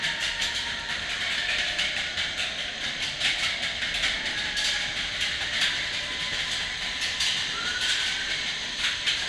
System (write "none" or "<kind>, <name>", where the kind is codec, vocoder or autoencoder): none